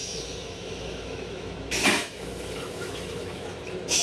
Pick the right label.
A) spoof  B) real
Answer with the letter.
A